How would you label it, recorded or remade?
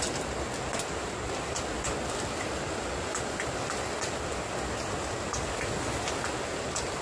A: recorded